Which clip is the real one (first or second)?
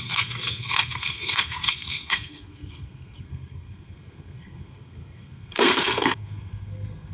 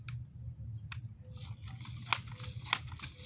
second